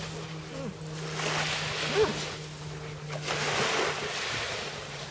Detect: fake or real real